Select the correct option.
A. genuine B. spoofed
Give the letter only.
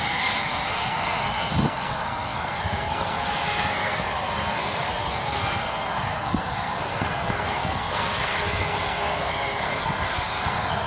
B